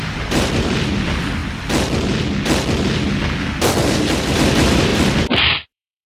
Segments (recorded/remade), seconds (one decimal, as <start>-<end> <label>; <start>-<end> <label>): 0.0-1.4 remade; 1.4-4.0 recorded; 4.0-6.1 remade